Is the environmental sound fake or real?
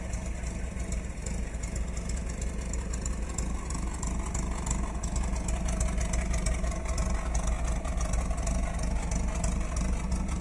real